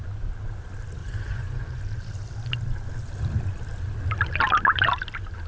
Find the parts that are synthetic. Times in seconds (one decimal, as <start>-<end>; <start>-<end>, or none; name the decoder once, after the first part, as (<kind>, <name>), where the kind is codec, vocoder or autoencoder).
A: 1.0-1.8 (vocoder, Vocos)